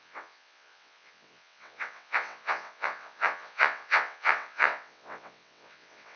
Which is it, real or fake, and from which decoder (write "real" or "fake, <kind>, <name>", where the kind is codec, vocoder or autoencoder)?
fake, vocoder, WaveNeXt